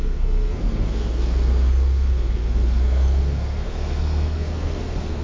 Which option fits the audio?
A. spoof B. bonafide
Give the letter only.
A